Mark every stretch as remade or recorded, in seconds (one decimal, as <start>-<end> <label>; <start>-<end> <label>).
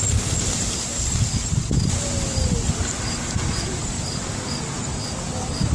0.0-5.7 recorded